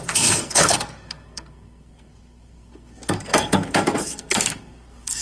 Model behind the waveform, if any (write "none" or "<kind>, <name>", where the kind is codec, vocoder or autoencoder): codec, SNAC